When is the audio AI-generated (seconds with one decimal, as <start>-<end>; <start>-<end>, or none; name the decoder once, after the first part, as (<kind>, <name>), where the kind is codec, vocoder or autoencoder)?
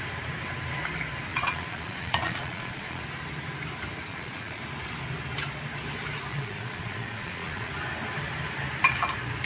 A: 1.3-3.0 (vocoder, Vocos); 4.1-4.6; 6.3-7.7